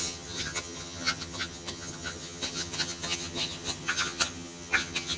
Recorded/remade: remade